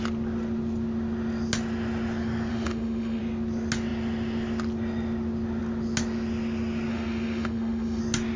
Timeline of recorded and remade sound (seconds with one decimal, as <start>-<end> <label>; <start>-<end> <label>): 0.0-2.5 recorded; 2.5-3.2 remade; 3.2-6.9 recorded; 6.9-8.0 remade; 8.0-8.4 recorded